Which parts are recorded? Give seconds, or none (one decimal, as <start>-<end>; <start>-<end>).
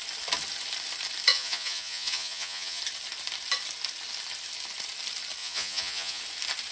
0.0-1.3; 2.8-5.4; 6.2-6.7